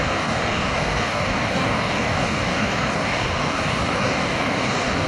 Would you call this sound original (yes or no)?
no